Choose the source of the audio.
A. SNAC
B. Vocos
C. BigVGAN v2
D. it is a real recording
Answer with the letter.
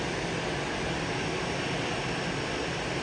D